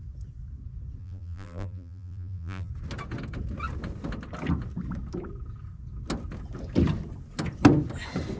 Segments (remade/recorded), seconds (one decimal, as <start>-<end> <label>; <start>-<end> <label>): 0.0-1.0 recorded; 1.0-2.7 remade; 2.7-8.4 recorded